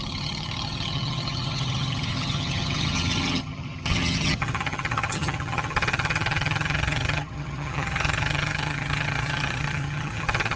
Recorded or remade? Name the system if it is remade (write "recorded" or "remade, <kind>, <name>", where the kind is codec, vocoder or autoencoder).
remade, vocoder, HiFi-GAN